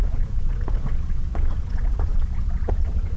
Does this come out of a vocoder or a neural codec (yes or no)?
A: yes